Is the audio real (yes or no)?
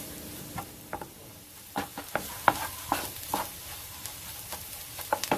yes